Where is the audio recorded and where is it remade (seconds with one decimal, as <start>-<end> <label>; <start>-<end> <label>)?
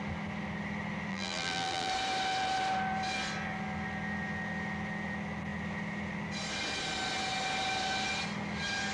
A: 0.0-1.1 recorded; 1.1-1.9 remade; 1.9-8.9 recorded